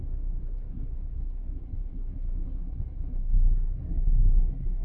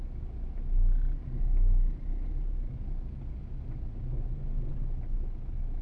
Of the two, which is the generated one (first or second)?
first